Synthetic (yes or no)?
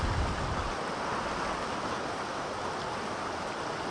no